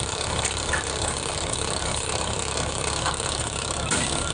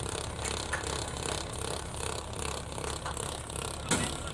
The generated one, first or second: first